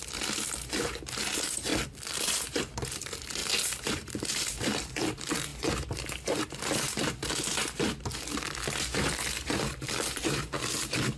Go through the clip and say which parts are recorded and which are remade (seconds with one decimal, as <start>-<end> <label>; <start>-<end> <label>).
0.0-1.7 remade; 1.7-2.6 recorded; 2.6-3.4 remade; 3.4-3.9 recorded; 3.9-11.2 remade